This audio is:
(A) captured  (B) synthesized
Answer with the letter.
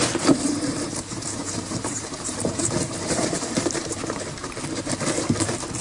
B